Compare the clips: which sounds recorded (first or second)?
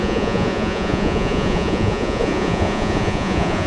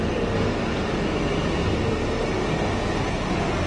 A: second